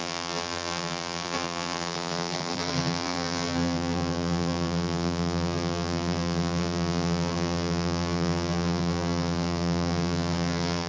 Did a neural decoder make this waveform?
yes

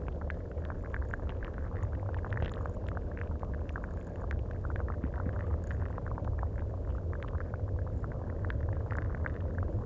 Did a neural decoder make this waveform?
no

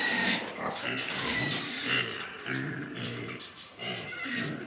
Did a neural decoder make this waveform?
yes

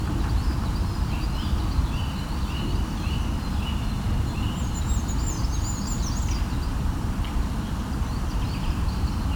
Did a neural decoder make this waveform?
yes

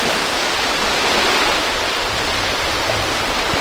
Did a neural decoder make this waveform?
no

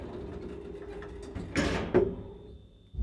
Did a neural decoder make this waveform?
no